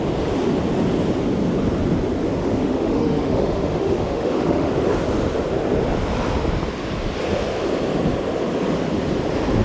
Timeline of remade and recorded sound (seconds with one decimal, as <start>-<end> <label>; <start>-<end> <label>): 0.0-2.4 recorded; 2.4-4.7 remade; 4.7-9.6 recorded